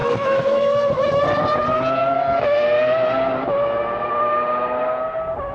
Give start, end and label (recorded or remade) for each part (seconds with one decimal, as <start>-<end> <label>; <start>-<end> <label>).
0.0-1.2 remade; 1.2-5.5 recorded